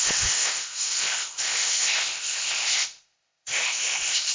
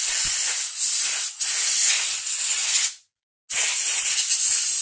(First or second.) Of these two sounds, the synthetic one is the first